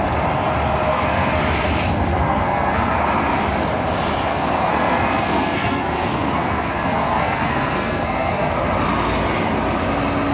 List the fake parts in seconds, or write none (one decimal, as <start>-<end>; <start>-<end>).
0.9-1.4; 2.1-2.9; 4.3-8.5